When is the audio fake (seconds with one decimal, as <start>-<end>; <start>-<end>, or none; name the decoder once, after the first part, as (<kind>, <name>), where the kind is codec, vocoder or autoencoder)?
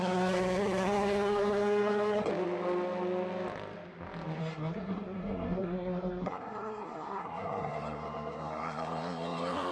0.0-2.3 (codec, SNAC); 4.4-9.7